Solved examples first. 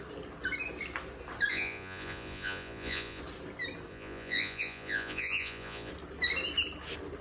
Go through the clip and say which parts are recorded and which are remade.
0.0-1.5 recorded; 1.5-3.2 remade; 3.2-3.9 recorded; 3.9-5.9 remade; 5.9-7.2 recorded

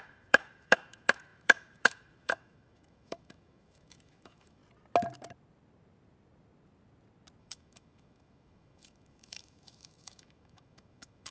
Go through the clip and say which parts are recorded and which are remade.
0.0-4.6 remade; 4.6-7.4 recorded; 7.4-11.3 remade

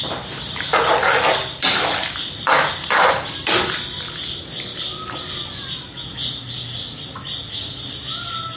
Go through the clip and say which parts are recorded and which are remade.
0.0-8.6 recorded